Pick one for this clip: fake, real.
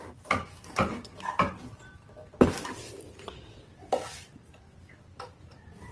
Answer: fake